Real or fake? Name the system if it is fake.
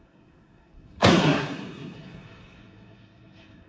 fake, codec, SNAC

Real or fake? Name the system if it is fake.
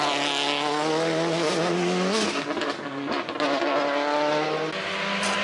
real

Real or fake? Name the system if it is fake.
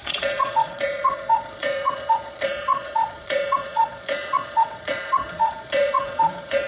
fake, vocoder, Vocos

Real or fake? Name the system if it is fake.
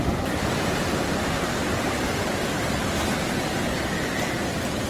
real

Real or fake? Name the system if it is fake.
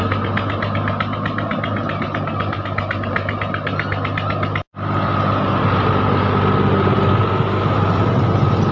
real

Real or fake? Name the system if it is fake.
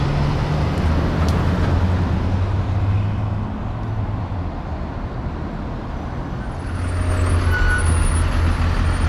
real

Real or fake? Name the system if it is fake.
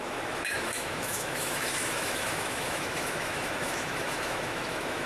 fake, autoencoder, DAC-VAE